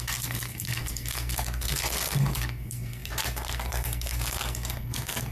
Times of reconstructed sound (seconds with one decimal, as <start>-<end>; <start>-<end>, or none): 0.0-5.3